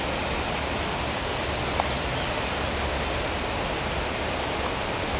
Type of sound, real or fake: real